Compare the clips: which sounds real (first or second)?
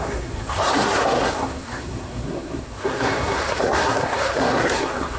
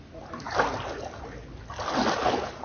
second